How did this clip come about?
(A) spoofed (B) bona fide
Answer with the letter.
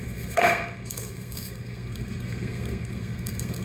A